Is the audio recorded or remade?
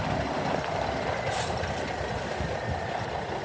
recorded